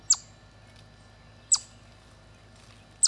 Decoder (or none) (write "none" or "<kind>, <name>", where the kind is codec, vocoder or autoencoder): none